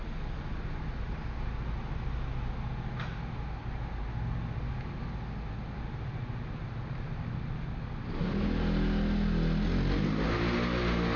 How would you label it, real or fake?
real